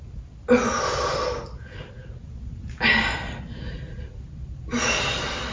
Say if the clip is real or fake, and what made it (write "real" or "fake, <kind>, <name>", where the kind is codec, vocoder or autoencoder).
real